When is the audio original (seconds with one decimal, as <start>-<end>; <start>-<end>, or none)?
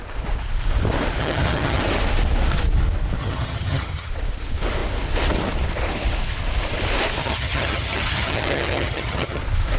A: 0.0-1.2; 1.8-3.2; 4.1-7.2; 9.4-9.8